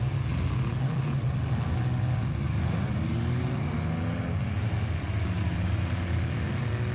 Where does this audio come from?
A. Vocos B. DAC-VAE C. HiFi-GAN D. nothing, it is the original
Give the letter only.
D